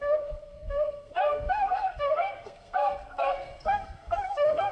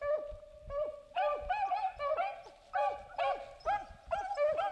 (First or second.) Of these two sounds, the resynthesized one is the first